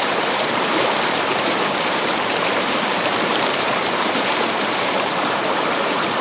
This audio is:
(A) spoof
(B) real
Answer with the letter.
A